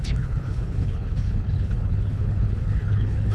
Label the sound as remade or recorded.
remade